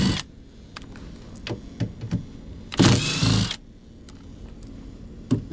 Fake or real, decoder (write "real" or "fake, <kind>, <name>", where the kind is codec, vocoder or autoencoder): real